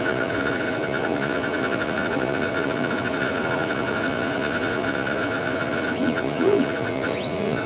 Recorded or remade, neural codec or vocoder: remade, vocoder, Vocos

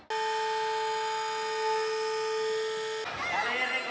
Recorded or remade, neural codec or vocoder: recorded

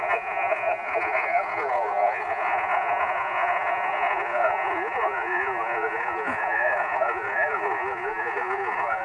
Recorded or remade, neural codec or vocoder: remade, vocoder, Vocos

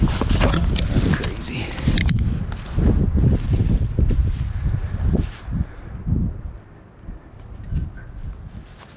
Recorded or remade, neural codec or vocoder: recorded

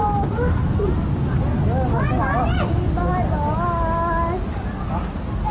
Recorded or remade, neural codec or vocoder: recorded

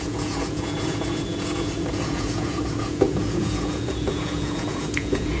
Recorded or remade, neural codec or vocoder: remade, vocoder, Vocos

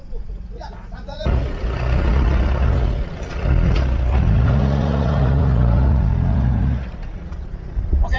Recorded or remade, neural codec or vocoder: remade, vocoder, Vocos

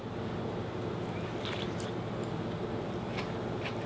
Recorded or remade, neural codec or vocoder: recorded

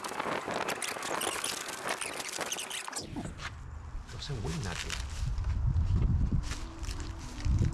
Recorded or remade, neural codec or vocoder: recorded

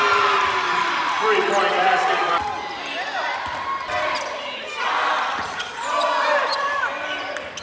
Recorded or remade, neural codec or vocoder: recorded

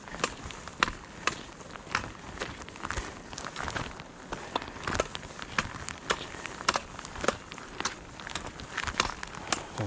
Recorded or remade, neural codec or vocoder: recorded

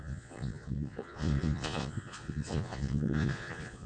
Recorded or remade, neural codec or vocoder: remade, vocoder, Vocos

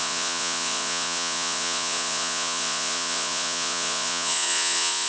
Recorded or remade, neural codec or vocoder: remade, vocoder, Vocos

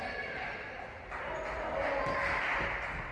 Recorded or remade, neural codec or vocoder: recorded